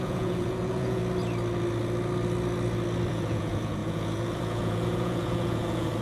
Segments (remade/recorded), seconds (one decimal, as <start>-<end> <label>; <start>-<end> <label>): 0.0-1.0 remade; 1.0-3.1 recorded; 3.1-6.0 remade